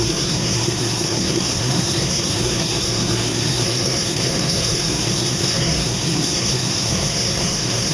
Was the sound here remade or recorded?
remade